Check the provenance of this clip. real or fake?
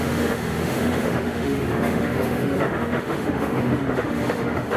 fake